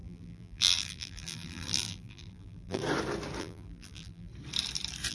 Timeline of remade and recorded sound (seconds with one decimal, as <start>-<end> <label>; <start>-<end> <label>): 0.0-2.8 remade; 2.8-3.4 recorded; 3.4-4.3 remade; 4.3-5.1 recorded